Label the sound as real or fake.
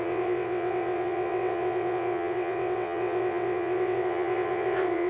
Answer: fake